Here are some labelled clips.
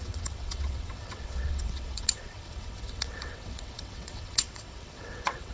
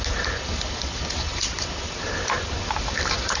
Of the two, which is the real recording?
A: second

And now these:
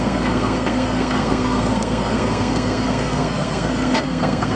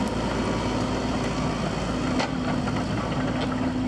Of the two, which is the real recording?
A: second